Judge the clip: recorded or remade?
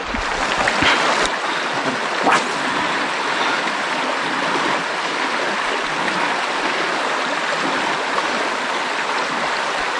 recorded